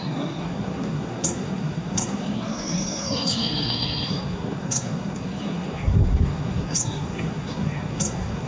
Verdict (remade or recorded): remade